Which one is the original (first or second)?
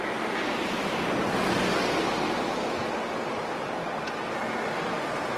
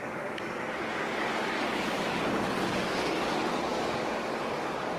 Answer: first